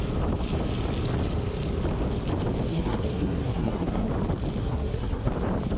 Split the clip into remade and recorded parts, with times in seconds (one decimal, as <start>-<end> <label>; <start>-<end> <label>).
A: 0.0-2.7 recorded; 2.7-4.1 remade; 4.1-4.6 recorded; 4.6-5.3 remade; 5.3-5.8 recorded